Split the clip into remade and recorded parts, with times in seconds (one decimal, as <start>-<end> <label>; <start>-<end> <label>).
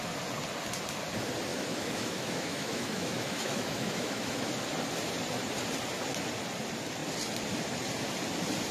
0.0-1.5 recorded; 1.5-4.5 remade; 4.5-8.7 recorded